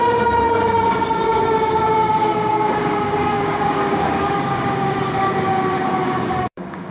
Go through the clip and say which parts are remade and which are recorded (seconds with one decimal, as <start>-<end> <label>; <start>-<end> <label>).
0.0-6.9 remade